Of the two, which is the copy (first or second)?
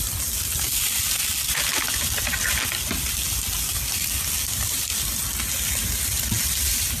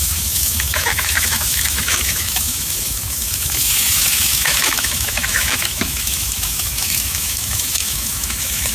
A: second